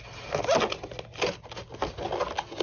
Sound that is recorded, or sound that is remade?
recorded